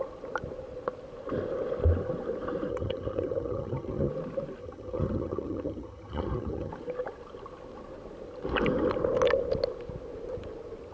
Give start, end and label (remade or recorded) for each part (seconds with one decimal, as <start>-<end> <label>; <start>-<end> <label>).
0.0-2.7 recorded; 2.7-4.1 remade; 4.1-4.6 recorded; 4.6-6.7 remade; 6.7-10.9 recorded

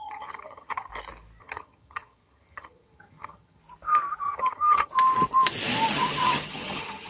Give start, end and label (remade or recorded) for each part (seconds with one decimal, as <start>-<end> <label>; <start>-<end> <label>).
0.0-0.9 remade; 0.9-1.4 recorded; 1.4-3.6 remade; 3.6-4.2 recorded; 4.2-4.9 remade; 4.9-5.9 recorded; 5.9-7.1 remade

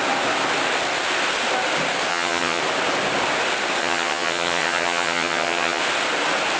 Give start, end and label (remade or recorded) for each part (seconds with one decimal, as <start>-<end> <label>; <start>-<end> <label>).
0.0-2.1 recorded; 2.1-2.6 remade; 2.6-3.8 recorded; 3.8-5.8 remade; 5.8-6.6 recorded

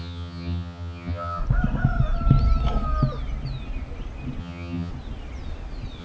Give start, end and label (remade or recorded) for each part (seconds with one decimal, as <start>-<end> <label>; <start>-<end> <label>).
0.0-1.4 remade; 1.4-4.4 recorded; 4.4-4.9 remade; 4.9-6.0 recorded

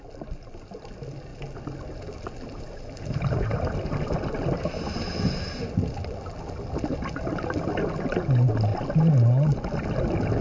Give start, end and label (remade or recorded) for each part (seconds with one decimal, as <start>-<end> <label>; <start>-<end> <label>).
0.0-10.4 recorded

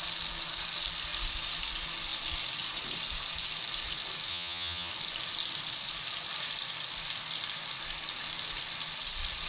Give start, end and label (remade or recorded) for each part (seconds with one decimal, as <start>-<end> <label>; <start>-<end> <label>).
0.0-4.3 recorded; 4.3-4.9 remade; 4.9-9.5 recorded

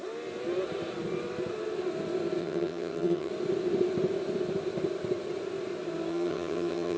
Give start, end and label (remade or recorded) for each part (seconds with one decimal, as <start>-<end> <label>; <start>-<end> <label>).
0.0-2.4 recorded; 2.4-3.3 remade; 3.3-6.1 recorded; 6.1-7.0 remade

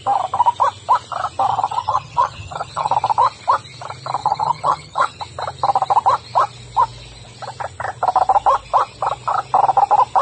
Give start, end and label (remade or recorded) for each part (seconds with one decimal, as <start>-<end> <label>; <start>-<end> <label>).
0.0-1.5 recorded; 1.5-2.9 remade; 2.9-4.2 recorded; 4.2-5.2 remade; 5.2-10.2 recorded